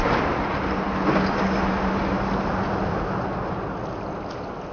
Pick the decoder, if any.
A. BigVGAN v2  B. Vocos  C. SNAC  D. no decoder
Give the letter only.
D